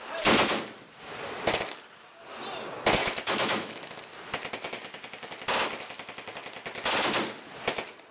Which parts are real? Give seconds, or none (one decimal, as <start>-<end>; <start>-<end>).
0.0-3.0; 4.0-8.1